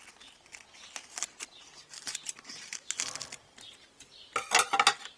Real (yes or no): yes